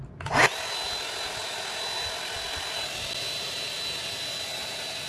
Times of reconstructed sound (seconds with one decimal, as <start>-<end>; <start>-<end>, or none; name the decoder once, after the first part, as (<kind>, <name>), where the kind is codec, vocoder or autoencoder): none